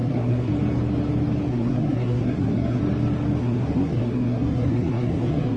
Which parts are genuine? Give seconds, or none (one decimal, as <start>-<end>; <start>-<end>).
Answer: 0.5-1.5; 2.8-3.4